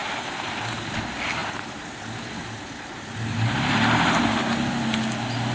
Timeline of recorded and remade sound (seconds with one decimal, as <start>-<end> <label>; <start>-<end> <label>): 0.0-5.5 recorded